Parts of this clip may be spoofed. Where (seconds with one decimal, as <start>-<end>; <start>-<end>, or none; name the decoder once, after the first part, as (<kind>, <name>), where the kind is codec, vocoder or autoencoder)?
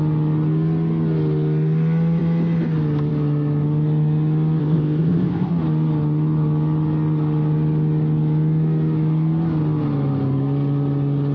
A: 4.6-5.5 (codec, ZipCodec)